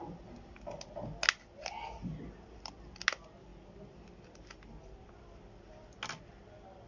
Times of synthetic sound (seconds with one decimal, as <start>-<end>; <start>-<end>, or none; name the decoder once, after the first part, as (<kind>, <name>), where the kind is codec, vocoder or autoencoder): none